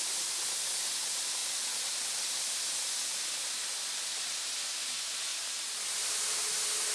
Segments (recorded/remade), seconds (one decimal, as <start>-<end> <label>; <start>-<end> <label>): 0.0-6.9 recorded